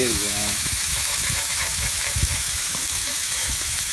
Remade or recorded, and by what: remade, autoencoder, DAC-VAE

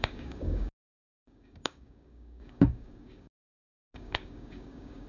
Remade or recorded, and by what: remade, codec, DAC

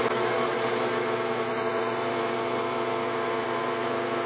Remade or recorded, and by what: recorded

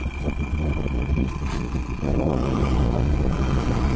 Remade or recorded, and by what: remade, vocoder, Vocos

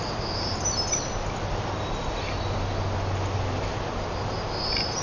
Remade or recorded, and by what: recorded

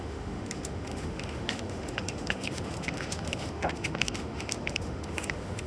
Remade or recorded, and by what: remade, autoencoder, DAC-VAE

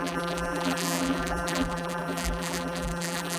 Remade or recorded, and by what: remade, vocoder, BigVGAN v2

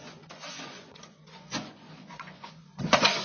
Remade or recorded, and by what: remade, vocoder, Vocos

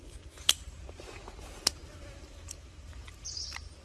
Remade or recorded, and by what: remade, vocoder, BigVGAN v2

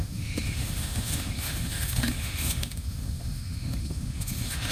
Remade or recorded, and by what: remade, autoencoder, DAC-VAE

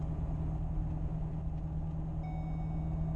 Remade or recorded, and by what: recorded